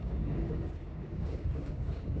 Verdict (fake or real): fake